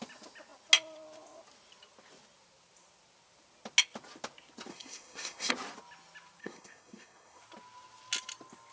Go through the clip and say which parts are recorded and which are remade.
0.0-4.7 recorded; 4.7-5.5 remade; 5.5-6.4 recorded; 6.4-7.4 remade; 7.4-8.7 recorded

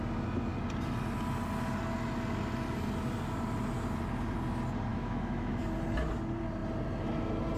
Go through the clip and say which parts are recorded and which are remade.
0.0-4.9 recorded; 4.9-5.6 remade; 5.6-7.6 recorded

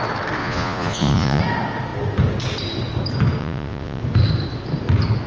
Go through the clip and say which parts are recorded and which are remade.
0.0-0.4 recorded; 0.4-1.4 remade; 1.4-3.4 recorded; 3.4-4.0 remade; 4.0-5.3 recorded

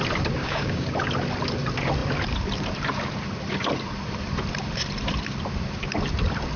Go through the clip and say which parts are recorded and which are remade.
0.0-0.4 recorded; 0.4-0.9 remade; 0.9-6.6 recorded

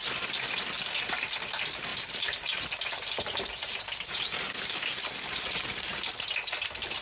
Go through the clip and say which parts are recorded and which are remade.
0.0-1.9 recorded; 1.9-6.1 remade; 6.1-7.0 recorded

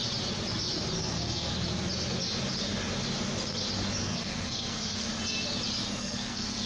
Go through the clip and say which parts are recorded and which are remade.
0.0-1.0 recorded; 1.0-1.5 remade; 1.5-4.0 recorded; 4.0-5.1 remade; 5.1-6.0 recorded; 6.0-6.7 remade

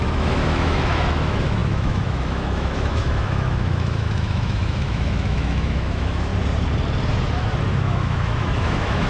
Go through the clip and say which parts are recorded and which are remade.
0.0-6.3 remade; 6.3-7.7 recorded; 7.7-9.1 remade